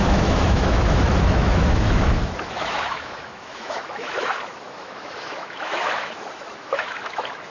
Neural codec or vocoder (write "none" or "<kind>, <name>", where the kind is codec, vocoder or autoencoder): autoencoder, DAC-VAE